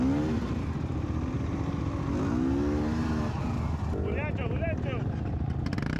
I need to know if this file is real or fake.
real